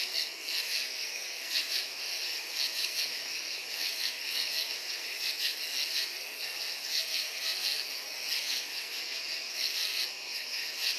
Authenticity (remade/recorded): remade